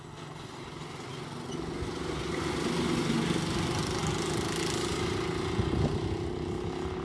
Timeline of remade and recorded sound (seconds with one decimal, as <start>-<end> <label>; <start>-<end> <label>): 0.0-7.0 recorded